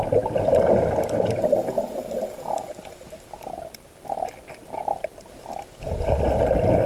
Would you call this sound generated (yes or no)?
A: no